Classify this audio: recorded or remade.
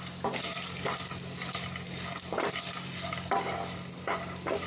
recorded